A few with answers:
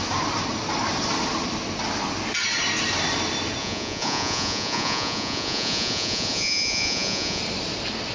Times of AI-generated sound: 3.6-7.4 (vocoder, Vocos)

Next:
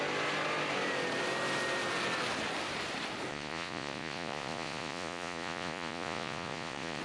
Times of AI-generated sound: 3.3-7.0 (vocoder, Vocos)

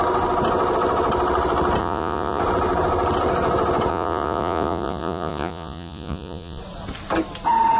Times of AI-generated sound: 1.8-2.4 (vocoder, Vocos); 3.9-6.6

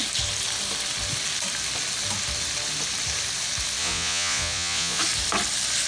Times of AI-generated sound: 3.8-5.0 (vocoder, Vocos)

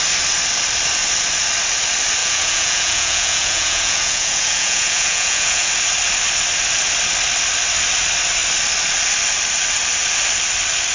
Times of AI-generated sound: 2.2-5.7 (vocoder, Vocos)

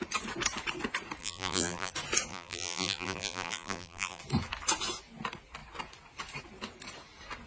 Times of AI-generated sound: 1.2-1.9 (vocoder, BigVGAN v2); 2.3-4.2

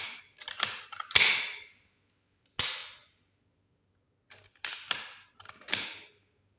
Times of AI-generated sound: none

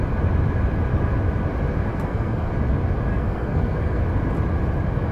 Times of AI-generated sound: 1.9-2.5 (codec, SNAC); 3.1-4.0